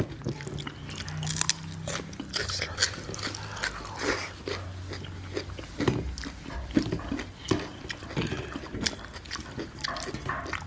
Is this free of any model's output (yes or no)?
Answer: yes